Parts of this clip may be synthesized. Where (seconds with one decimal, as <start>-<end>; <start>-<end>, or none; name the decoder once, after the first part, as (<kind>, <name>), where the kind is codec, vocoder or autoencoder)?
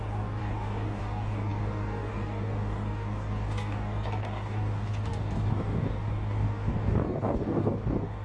0.0-8.2 (codec, DAC)